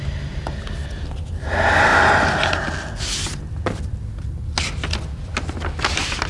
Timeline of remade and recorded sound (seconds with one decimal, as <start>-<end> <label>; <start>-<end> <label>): 0.0-6.3 recorded